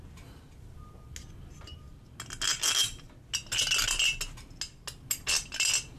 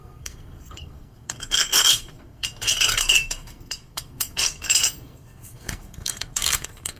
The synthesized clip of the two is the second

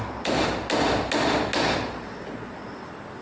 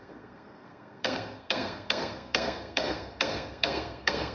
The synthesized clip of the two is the second